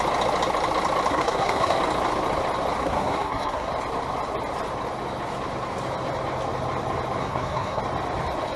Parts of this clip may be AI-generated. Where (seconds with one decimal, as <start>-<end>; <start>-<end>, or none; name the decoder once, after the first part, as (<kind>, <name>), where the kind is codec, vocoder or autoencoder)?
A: 1.1-1.8 (codec, SNAC); 2.8-3.7; 7.2-7.8